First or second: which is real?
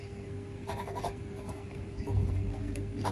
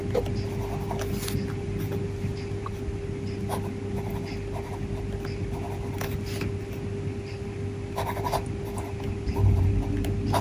second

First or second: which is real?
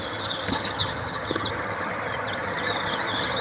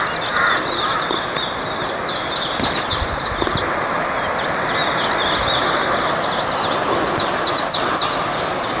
second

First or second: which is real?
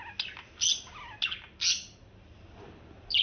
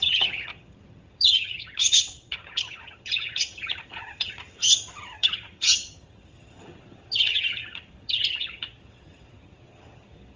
first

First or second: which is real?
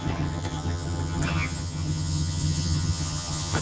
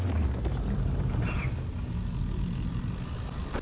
second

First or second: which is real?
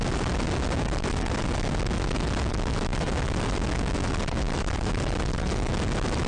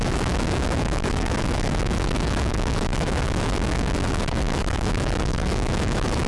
first